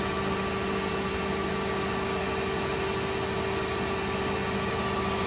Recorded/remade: recorded